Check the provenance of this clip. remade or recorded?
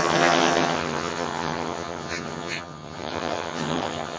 remade